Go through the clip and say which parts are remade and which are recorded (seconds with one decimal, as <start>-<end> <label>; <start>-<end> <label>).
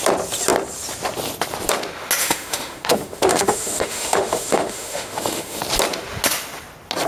0.0-2.2 recorded; 2.2-5.6 remade; 5.6-7.1 recorded